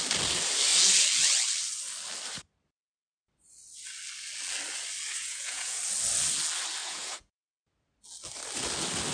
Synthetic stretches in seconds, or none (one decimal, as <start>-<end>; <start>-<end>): 5.2-5.8; 6.8-7.4